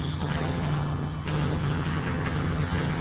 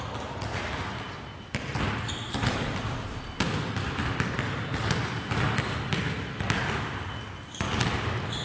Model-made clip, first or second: first